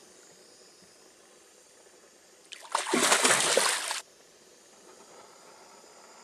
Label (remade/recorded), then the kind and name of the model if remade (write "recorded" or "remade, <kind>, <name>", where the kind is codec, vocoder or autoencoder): recorded